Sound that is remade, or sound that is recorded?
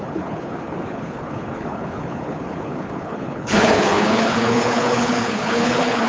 remade